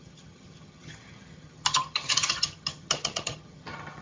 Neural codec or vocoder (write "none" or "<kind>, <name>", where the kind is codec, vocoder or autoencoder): vocoder, HiFi-GAN